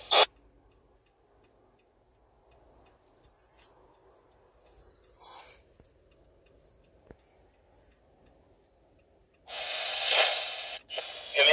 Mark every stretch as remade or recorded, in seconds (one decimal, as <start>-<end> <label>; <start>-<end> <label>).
0.0-11.5 recorded